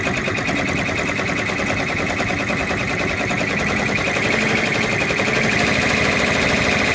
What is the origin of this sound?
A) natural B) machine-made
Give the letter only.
A